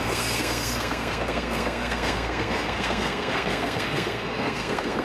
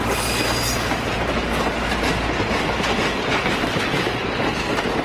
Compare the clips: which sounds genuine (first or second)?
second